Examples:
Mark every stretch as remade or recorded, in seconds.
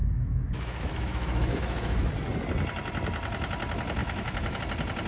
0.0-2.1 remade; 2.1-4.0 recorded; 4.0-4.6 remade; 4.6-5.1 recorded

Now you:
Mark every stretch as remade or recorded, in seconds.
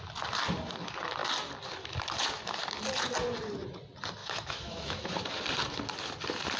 0.0-4.2 recorded; 4.2-5.1 remade; 5.1-6.6 recorded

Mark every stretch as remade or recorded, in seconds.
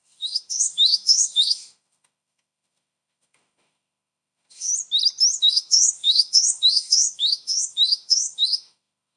0.0-4.7 remade; 4.7-5.4 recorded; 5.4-9.2 remade